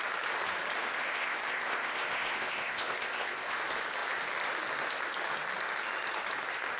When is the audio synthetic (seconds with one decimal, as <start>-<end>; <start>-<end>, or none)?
1.0-3.6

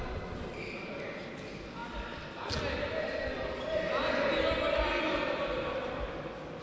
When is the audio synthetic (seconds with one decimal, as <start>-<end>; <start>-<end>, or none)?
none

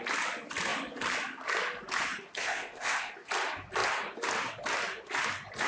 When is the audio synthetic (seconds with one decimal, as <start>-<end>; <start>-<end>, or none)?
2.4-3.1